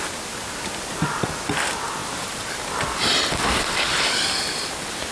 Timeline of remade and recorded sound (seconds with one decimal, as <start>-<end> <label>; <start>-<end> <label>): 0.0-5.1 recorded